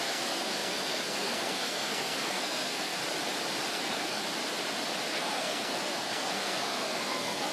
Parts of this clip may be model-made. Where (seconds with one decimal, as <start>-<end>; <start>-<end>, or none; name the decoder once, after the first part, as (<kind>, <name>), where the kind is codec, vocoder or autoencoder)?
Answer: 0.0-3.0 (codec, SNAC); 3.7-4.2; 5.1-7.5